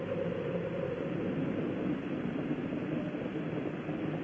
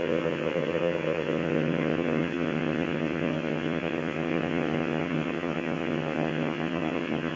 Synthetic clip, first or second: second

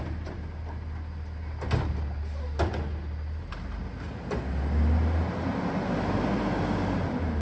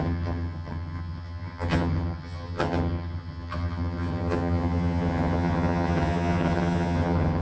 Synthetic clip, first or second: second